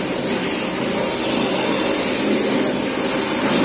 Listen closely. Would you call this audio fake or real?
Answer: real